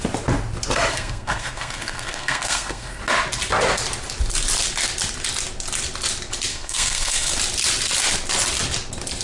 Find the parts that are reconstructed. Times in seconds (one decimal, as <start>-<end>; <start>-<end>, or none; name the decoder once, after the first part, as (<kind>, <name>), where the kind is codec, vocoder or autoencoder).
0.9-3.0 (codec, SNAC); 6.5-7.3